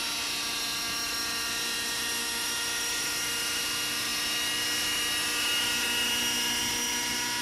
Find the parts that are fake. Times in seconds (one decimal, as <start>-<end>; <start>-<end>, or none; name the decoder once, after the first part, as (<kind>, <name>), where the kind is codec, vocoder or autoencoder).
none